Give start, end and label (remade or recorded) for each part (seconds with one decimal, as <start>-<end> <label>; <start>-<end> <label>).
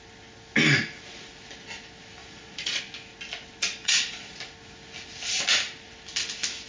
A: 0.0-2.2 recorded; 2.2-2.8 remade; 2.8-3.8 recorded; 3.8-4.4 remade; 4.4-6.7 recorded